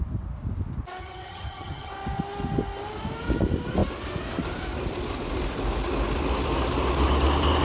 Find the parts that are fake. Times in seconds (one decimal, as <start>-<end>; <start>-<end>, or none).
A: 1.0-1.9